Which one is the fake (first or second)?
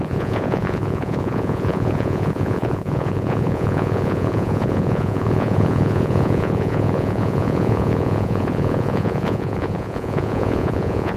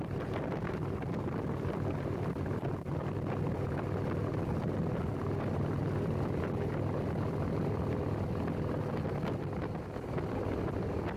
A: first